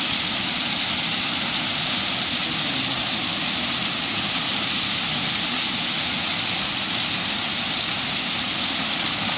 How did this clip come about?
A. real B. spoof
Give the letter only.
A